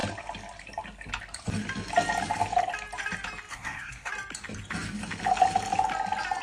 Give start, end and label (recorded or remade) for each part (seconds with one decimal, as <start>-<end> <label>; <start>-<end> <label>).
0.0-3.5 recorded; 3.5-4.1 remade; 4.1-6.4 recorded